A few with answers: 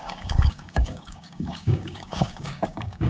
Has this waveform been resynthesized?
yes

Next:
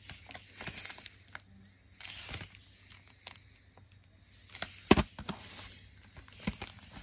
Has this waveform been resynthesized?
no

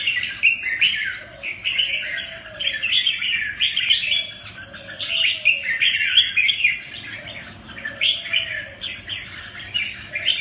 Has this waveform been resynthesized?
no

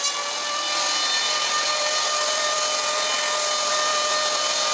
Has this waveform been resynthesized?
yes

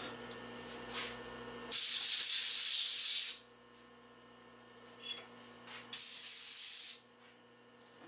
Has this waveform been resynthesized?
no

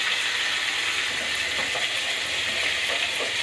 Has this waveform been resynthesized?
no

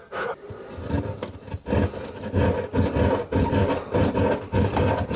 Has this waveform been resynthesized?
no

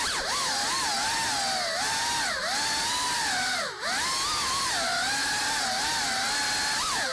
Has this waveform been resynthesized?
no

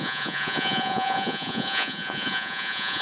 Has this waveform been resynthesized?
yes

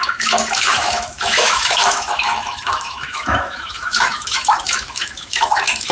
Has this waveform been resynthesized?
yes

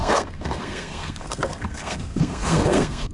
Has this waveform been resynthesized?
yes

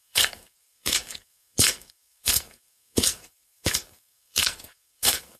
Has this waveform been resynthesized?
yes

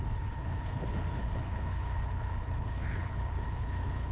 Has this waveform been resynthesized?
yes